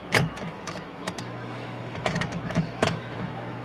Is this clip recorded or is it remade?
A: remade